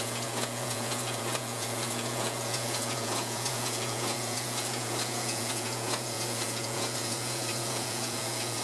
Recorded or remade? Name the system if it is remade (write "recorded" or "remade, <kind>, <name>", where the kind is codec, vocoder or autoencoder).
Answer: remade, vocoder, Vocos